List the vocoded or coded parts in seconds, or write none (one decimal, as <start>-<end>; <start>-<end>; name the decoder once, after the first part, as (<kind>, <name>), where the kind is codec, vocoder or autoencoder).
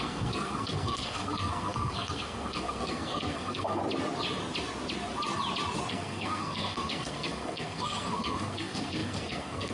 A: 0.0-3.8 (codec, SNAC); 5.9-9.7